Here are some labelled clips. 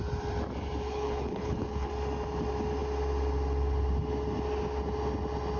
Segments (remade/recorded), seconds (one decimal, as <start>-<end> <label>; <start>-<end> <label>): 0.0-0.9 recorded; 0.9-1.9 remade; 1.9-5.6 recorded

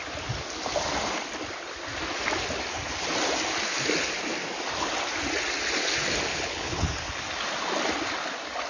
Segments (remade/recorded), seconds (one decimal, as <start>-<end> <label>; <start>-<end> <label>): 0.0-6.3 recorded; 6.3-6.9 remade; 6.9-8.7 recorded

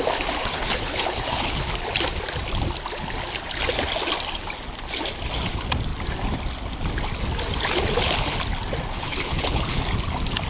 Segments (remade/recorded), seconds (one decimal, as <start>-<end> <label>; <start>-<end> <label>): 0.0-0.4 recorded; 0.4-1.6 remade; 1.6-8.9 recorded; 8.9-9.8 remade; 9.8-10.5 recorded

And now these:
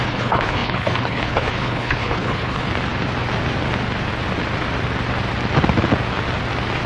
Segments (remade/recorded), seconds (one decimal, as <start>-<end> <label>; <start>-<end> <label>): 0.0-2.7 remade; 2.7-6.9 recorded

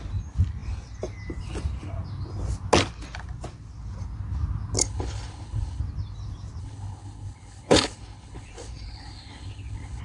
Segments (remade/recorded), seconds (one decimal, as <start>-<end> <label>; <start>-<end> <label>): 0.0-4.8 recorded; 4.8-5.8 remade; 5.8-6.6 recorded; 6.6-10.0 remade

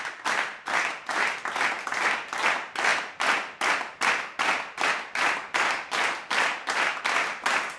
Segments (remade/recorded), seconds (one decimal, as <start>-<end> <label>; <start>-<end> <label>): 0.0-7.8 recorded

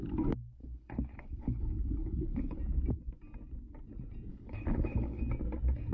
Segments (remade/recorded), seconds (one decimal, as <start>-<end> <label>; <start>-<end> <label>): 0.0-0.6 recorded; 0.6-2.6 remade; 2.6-4.3 recorded; 4.3-5.2 remade; 5.2-5.9 recorded